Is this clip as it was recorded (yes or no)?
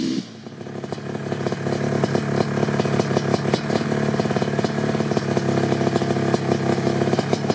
yes